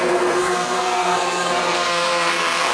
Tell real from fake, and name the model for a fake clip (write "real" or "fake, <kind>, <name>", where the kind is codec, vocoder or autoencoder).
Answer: fake, codec, SNAC